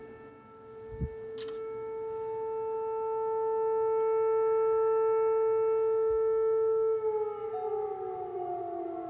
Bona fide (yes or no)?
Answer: yes